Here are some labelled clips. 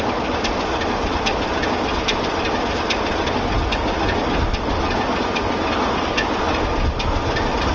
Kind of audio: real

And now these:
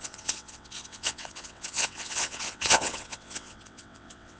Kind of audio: fake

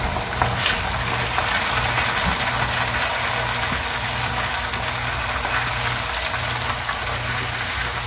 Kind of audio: real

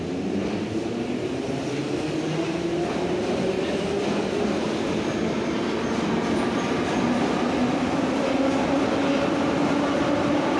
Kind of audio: real